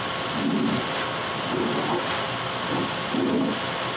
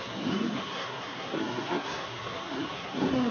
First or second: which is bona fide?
first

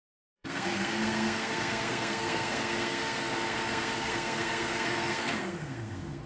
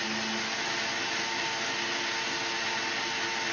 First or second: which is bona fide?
second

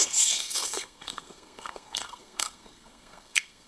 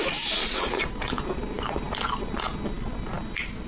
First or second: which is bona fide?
second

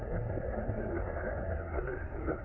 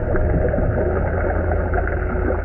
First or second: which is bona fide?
second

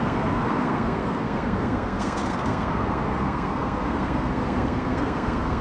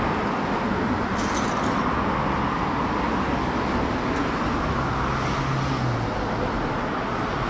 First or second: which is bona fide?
second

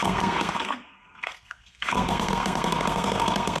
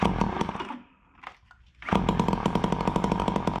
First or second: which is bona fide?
second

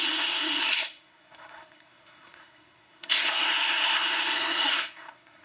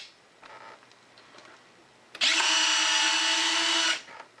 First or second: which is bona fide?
second